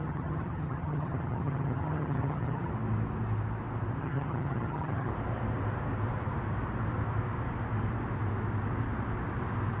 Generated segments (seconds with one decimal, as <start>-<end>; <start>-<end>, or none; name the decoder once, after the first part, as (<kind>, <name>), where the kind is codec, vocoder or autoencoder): 0.0-2.7 (vocoder, HiFi-GAN); 4.0-5.1